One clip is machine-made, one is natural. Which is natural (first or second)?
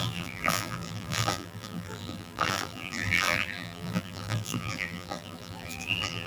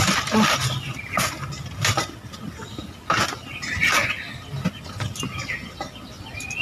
second